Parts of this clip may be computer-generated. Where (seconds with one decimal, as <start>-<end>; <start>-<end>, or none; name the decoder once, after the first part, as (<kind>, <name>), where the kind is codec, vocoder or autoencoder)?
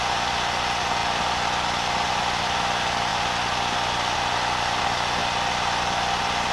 1.0-2.1 (vocoder, BigVGAN v2); 5.2-5.8